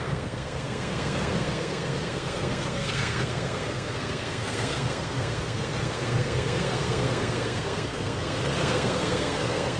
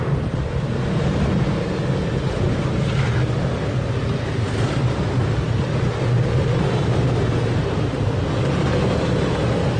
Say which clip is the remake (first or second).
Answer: first